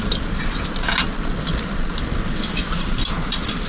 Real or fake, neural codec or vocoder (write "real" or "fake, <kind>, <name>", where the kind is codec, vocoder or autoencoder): real